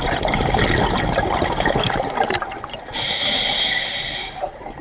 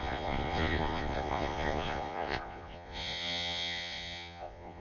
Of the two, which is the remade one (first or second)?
second